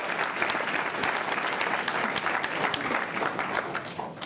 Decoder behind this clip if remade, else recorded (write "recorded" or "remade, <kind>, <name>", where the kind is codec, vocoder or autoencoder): recorded